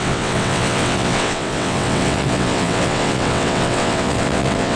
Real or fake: fake